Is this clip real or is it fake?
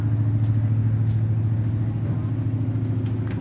real